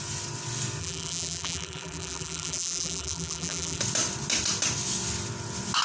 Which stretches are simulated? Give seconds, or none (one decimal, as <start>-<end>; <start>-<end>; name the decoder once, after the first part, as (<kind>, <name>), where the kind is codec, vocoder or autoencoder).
0.8-3.8 (vocoder, BigVGAN v2)